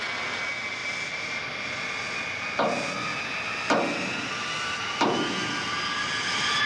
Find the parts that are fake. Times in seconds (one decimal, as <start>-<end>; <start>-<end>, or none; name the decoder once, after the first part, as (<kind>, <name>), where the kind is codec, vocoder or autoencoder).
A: none